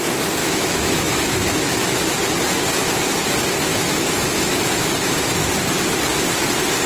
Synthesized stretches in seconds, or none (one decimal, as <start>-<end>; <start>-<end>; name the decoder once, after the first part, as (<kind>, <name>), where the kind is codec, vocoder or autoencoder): 0.4-2.1 (autoencoder, DAC-VAE); 3.7-4.7